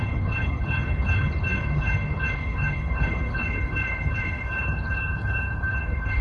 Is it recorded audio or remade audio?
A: remade